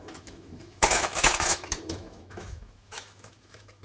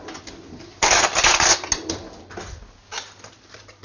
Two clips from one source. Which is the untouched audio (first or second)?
second